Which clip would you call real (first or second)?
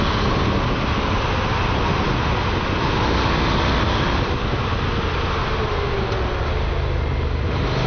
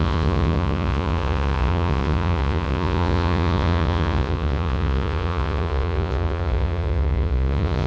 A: first